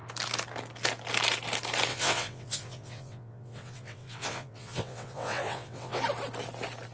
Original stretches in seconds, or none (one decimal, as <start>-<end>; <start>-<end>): 0.0-1.9; 6.0-6.9